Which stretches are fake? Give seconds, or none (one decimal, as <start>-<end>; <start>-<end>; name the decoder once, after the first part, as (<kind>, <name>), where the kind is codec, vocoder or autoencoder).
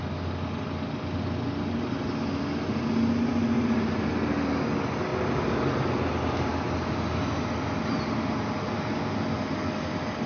none